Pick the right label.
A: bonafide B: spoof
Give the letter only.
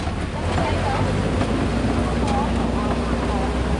A